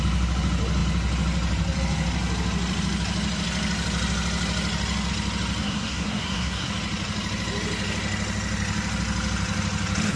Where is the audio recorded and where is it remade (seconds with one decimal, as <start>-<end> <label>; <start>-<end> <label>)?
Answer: 0.0-5.6 recorded; 5.6-6.7 remade; 6.7-10.2 recorded